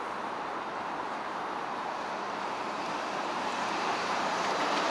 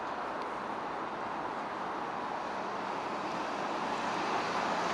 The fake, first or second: first